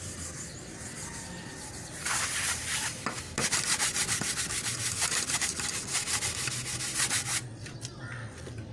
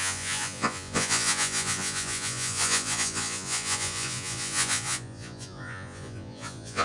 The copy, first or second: second